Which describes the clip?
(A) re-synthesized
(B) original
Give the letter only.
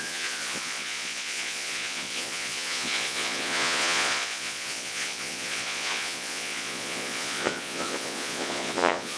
A